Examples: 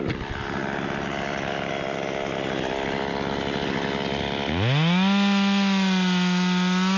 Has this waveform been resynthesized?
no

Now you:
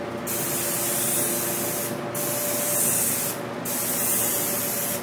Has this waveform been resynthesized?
no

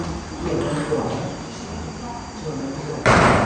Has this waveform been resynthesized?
yes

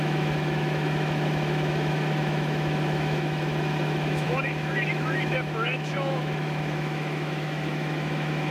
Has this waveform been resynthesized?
yes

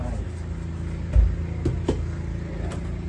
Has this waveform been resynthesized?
no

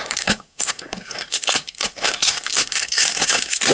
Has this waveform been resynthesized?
yes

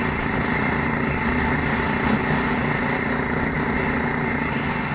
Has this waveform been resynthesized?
no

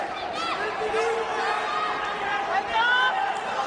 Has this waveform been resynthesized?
no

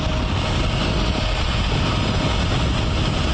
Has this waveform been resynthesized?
no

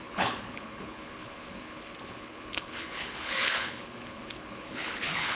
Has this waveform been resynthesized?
yes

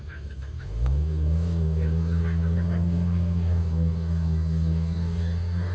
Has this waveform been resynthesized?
yes